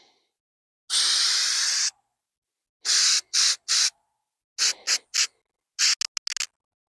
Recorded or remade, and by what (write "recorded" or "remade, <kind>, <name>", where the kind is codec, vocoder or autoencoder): recorded